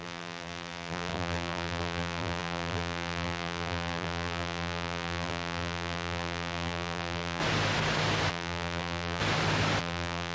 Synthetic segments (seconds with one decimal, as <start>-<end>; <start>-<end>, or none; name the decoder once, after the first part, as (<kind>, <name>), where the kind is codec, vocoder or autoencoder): 0.0-7.4 (vocoder, BigVGAN v2); 8.3-9.2; 9.8-10.3